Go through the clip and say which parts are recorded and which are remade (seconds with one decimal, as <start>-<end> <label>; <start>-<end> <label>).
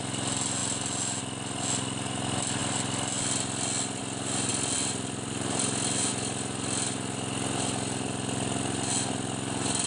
0.0-4.5 recorded; 4.5-6.1 remade; 6.1-9.9 recorded